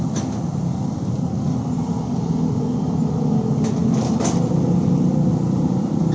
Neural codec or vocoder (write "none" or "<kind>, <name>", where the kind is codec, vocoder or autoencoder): none